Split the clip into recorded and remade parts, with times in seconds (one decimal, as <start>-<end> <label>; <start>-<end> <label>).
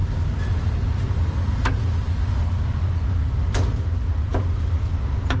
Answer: 0.0-5.4 recorded